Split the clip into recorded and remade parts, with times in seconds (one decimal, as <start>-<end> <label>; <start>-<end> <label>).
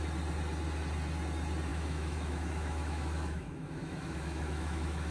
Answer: 0.0-1.7 recorded; 1.7-5.1 remade